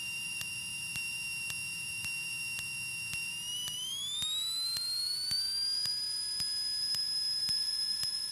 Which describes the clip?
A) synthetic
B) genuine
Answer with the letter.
A